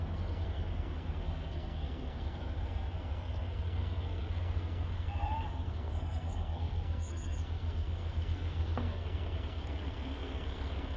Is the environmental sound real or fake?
fake